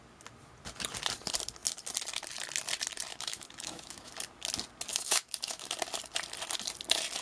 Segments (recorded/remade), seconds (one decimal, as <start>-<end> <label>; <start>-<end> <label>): 0.0-3.1 recorded; 3.1-4.1 remade; 4.1-4.9 recorded; 4.9-5.7 remade; 5.7-7.2 recorded